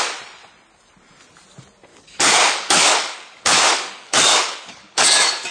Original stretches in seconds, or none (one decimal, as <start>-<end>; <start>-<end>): 0.0-1.9